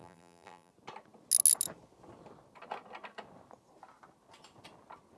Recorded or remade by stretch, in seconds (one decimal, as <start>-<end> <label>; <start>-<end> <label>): 0.0-0.7 remade; 0.7-5.2 recorded